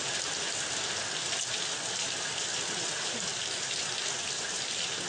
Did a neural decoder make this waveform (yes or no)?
no